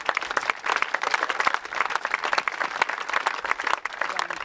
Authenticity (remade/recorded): recorded